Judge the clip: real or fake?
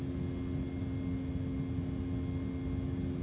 real